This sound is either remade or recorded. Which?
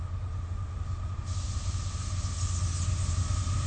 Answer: recorded